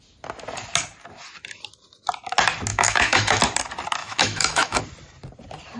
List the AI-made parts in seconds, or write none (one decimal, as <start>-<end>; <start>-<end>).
2.7-3.4; 4.0-4.8